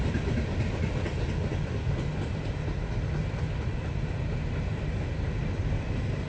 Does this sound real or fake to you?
real